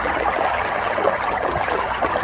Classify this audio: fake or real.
fake